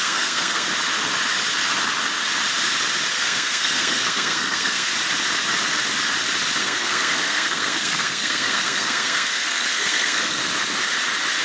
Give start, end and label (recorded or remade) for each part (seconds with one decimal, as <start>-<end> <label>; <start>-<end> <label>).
0.0-0.7 remade; 0.7-3.1 recorded; 3.1-4.9 remade; 4.9-6.6 recorded; 6.6-10.4 remade; 10.4-11.4 recorded

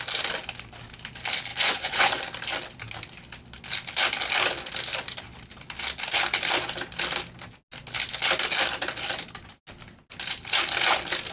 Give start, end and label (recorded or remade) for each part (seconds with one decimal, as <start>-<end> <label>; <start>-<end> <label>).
0.0-1.5 recorded; 1.5-2.2 remade; 2.2-11.3 recorded

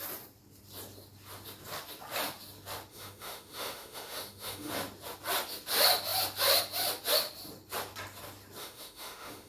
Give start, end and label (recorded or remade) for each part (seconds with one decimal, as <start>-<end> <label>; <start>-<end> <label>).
0.0-2.9 recorded; 2.9-4.7 remade; 4.7-8.6 recorded; 8.6-9.5 remade

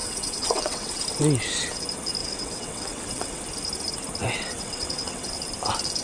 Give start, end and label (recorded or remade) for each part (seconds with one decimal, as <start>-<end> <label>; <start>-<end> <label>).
0.0-1.0 remade; 1.0-2.2 recorded; 2.2-3.4 remade; 3.4-4.2 recorded; 4.2-5.3 remade; 5.3-6.0 recorded

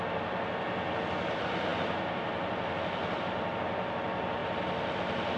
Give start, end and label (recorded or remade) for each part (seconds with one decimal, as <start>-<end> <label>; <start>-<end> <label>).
0.0-5.4 recorded